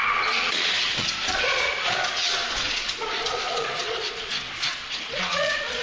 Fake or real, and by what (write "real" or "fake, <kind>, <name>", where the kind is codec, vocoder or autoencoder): fake, vocoder, Vocos